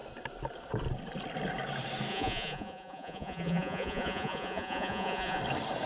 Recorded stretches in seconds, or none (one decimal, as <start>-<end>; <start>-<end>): 0.0-2.1; 5.4-5.9